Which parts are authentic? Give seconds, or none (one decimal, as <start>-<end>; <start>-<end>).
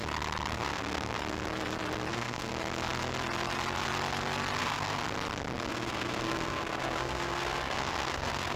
0.0-0.5; 1.2-2.1; 2.5-4.6; 5.0-5.7